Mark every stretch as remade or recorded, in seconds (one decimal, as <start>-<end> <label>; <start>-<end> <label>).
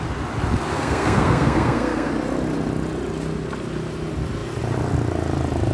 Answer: 0.0-0.7 recorded; 0.7-2.1 remade; 2.1-5.7 recorded